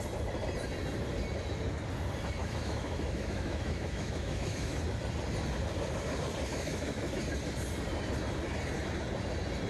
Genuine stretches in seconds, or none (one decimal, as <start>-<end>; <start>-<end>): 0.0-2.4; 4.8-6.5; 7.1-9.7

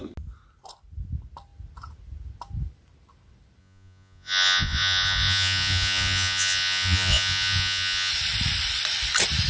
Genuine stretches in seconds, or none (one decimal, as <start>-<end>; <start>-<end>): 0.0-3.6; 8.1-9.5